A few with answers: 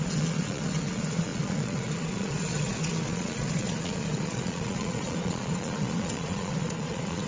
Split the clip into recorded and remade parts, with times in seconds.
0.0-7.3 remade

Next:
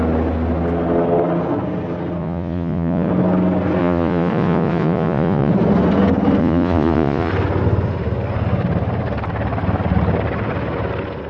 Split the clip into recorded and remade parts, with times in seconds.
0.0-2.2 recorded; 2.2-3.1 remade; 3.1-3.8 recorded; 3.8-5.5 remade; 5.5-6.4 recorded; 6.4-7.3 remade; 7.3-11.3 recorded

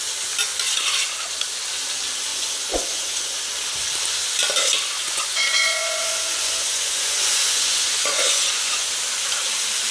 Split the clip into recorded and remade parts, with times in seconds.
0.0-2.3 recorded; 2.3-3.4 remade; 3.4-5.0 recorded; 5.0-8.9 remade; 8.9-9.9 recorded

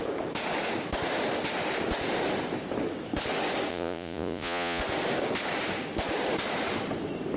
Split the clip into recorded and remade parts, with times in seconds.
0.0-3.7 recorded; 3.7-4.8 remade; 4.8-7.4 recorded

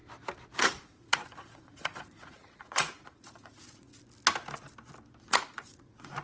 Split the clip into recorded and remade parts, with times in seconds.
0.0-0.6 recorded; 0.6-3.9 remade; 3.9-5.2 recorded; 5.2-6.2 remade

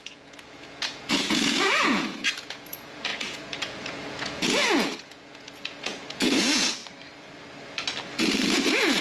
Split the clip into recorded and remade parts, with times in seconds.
0.0-6.8 remade; 6.8-8.1 recorded; 8.1-9.0 remade

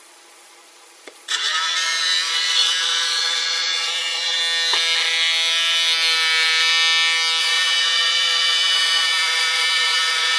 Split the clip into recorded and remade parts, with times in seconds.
0.0-4.4 remade; 4.4-7.4 recorded; 7.4-10.4 remade

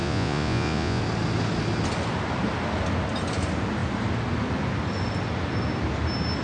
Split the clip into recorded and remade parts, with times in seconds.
0.0-1.0 remade; 1.0-6.4 recorded